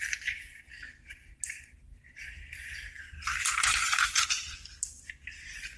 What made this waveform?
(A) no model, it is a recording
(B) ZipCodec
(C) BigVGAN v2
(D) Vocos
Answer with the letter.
A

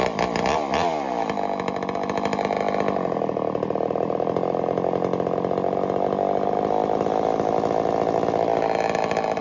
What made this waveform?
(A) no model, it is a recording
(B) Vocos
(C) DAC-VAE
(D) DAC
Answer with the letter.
A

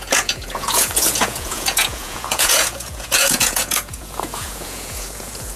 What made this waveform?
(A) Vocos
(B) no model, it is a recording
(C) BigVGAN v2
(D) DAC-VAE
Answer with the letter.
A